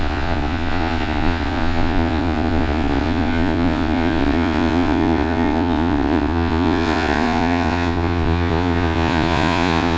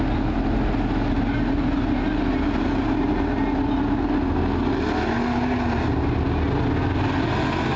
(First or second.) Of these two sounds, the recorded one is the second